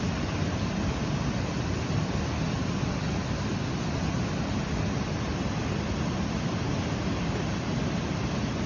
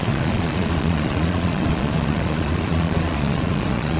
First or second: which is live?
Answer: first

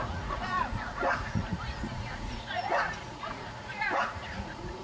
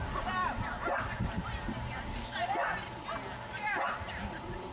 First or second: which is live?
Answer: second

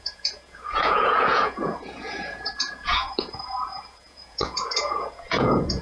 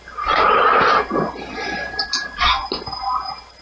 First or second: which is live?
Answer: second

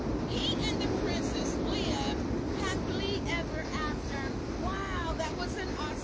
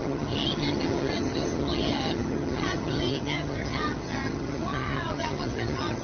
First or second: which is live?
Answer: first